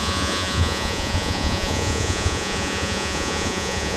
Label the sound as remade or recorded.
remade